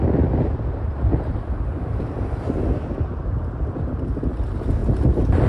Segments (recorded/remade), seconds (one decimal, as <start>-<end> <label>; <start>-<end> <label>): 0.0-5.5 recorded